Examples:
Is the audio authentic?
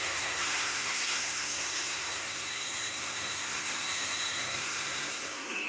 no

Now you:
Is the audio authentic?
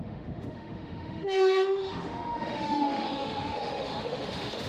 no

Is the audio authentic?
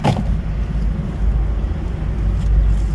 yes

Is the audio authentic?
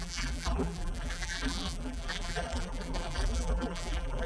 no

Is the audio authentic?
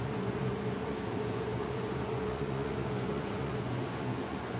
no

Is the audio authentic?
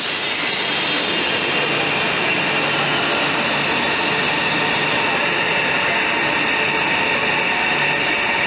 yes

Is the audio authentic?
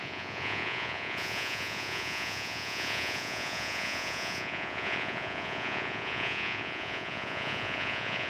no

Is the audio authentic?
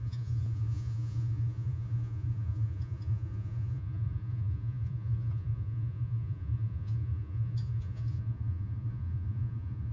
no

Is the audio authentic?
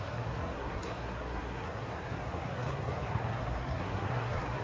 no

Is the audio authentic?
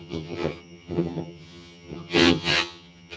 no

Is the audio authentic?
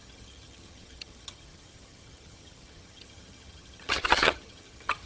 no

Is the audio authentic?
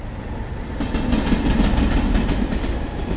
yes